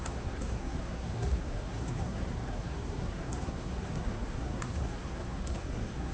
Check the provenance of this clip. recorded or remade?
remade